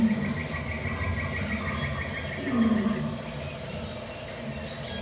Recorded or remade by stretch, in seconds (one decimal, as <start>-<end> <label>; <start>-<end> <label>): 0.0-5.0 recorded